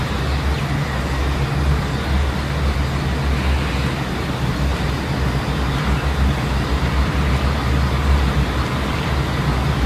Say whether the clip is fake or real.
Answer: real